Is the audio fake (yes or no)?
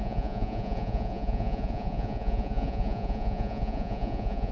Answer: yes